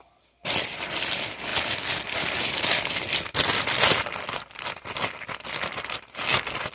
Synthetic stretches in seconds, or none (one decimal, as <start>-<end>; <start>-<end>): none